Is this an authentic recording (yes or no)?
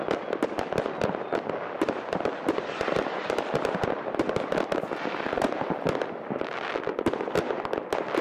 yes